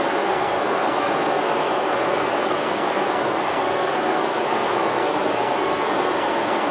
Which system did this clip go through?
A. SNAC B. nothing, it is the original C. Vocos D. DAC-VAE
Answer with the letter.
A